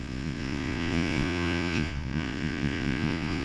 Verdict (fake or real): fake